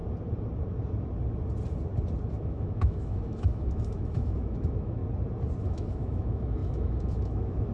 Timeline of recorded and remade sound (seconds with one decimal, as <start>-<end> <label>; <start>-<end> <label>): 0.0-2.3 recorded; 2.3-5.0 remade; 5.0-5.6 recorded; 5.6-7.7 remade